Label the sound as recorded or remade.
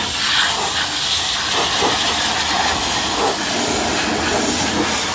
recorded